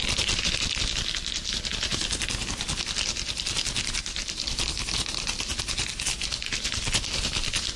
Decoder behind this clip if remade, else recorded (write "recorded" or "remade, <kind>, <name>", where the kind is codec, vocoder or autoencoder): recorded